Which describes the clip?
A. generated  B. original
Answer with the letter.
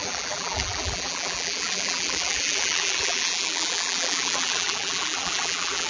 A